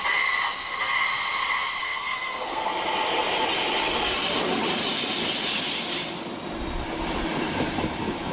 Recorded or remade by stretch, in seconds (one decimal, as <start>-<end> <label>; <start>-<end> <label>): 0.0-1.8 recorded; 1.8-2.7 remade; 2.7-8.3 recorded